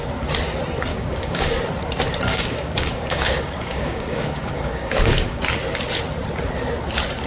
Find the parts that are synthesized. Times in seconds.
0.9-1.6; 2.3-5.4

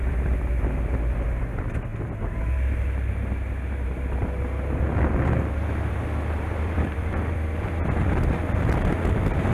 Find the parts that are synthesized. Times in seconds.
0.0-1.9; 5.9-9.5

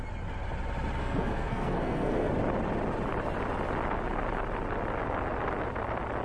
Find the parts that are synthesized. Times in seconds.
1.0-2.3

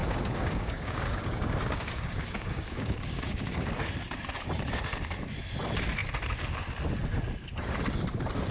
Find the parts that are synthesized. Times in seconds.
0.0-3.9

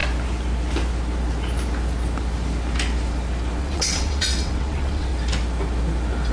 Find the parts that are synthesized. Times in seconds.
3.6-5.1